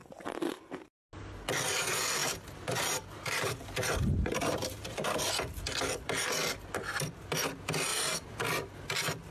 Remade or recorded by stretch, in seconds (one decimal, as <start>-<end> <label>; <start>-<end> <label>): 0.0-2.2 recorded; 2.2-5.3 remade; 5.3-7.9 recorded; 7.9-8.4 remade; 8.4-9.3 recorded